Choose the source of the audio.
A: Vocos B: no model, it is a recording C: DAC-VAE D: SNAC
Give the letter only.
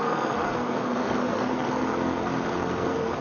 D